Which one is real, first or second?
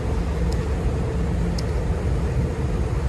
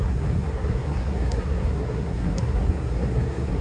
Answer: first